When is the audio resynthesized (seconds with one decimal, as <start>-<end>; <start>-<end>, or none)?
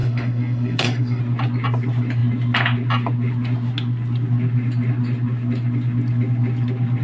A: 0.0-1.2